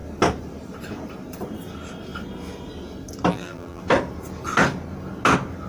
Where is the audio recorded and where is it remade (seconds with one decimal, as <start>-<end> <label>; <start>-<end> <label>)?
0.0-3.3 recorded; 3.3-3.8 remade; 3.8-5.7 recorded